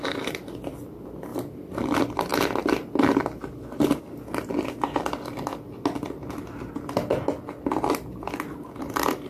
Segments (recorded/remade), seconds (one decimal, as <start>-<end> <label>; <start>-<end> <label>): 0.0-9.3 recorded